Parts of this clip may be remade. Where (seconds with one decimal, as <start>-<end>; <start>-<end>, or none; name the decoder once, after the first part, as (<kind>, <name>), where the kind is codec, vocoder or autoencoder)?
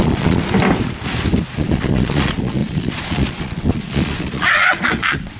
0.0-0.4 (vocoder, Vocos); 1.5-5.4